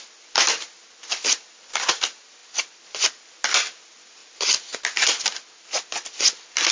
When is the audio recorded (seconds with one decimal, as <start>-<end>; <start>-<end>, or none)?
0.0-6.7